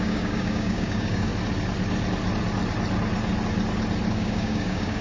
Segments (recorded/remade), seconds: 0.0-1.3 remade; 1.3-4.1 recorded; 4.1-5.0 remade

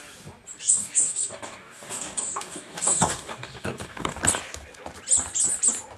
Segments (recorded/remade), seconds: 0.0-0.6 recorded; 0.6-4.2 remade; 4.2-6.0 recorded

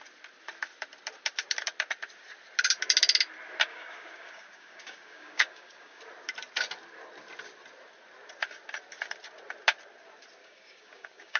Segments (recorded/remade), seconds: 0.0-3.7 recorded; 3.7-6.0 remade; 6.0-10.4 recorded; 10.4-11.4 remade

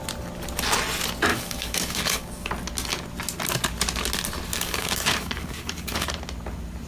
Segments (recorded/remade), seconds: 0.0-1.3 recorded; 1.3-2.5 remade; 2.5-4.5 recorded; 4.5-6.1 remade; 6.1-6.9 recorded

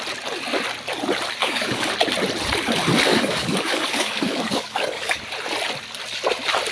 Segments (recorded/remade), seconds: 0.0-1.4 recorded; 1.4-1.9 remade; 1.9-3.1 recorded; 3.1-5.2 remade; 5.2-6.7 recorded